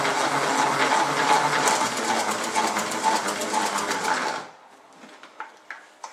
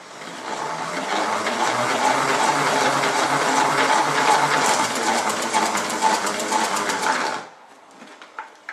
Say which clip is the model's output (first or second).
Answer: second